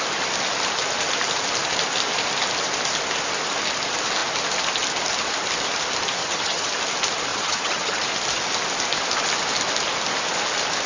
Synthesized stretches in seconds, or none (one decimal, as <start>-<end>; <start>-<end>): 6.2-6.7; 7.3-8.0